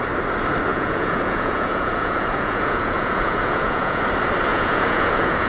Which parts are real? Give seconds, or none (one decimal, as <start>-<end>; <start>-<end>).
0.0-0.7; 4.0-4.5